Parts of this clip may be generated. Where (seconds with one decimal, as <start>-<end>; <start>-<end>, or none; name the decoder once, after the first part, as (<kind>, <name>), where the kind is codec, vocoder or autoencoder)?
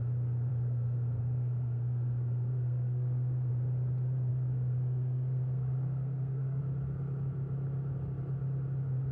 0.5-3.5 (codec, SNAC); 4.3-6.6